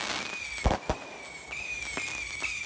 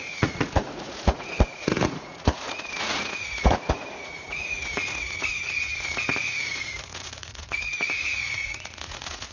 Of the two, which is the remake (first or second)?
second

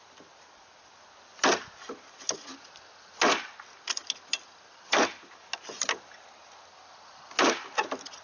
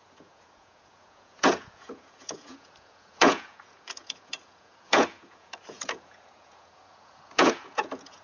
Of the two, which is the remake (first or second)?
second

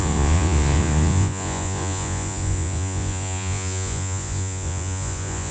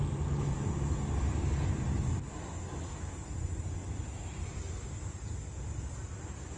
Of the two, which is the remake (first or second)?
first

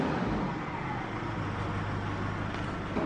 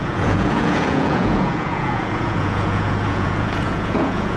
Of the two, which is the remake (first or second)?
second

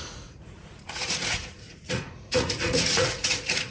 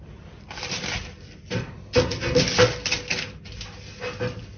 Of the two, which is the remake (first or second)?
first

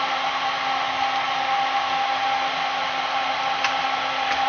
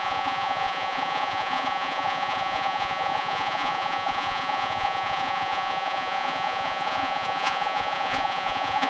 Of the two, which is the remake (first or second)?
second